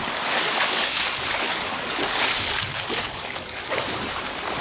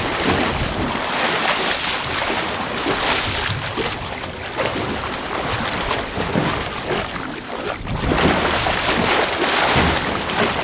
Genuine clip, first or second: second